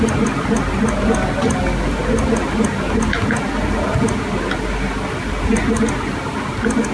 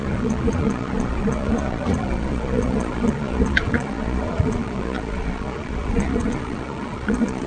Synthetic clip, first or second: second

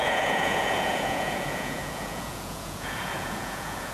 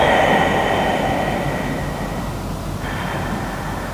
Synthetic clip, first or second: first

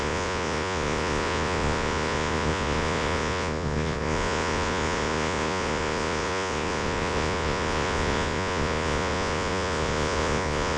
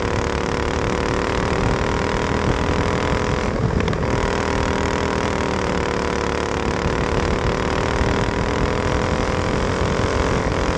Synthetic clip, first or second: first